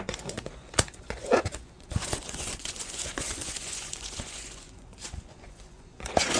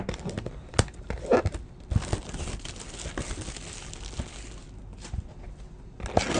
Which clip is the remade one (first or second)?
first